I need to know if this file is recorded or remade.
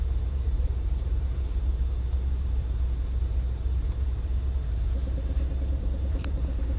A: remade